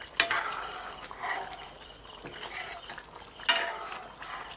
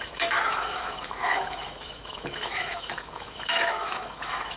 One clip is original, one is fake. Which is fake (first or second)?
second